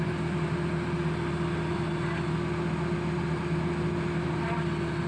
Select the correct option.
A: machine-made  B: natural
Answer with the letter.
B